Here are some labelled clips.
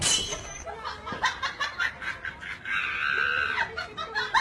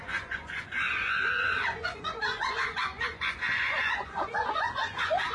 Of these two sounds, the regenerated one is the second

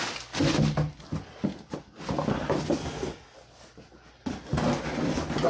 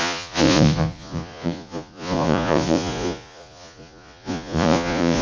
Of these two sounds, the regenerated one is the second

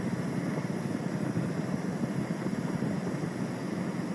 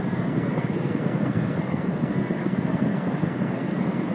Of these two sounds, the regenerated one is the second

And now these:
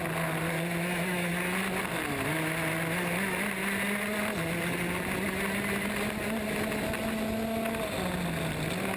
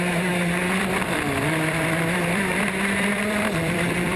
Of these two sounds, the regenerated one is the second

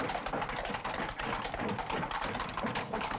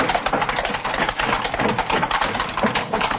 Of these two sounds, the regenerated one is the first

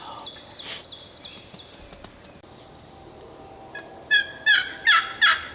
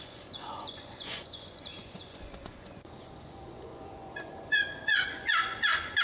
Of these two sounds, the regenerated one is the second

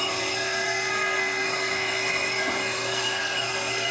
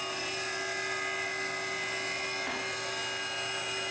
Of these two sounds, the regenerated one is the first